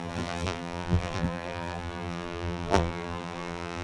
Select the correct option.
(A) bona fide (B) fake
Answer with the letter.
B